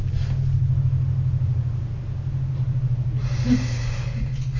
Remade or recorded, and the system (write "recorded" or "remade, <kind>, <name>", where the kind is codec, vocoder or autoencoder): recorded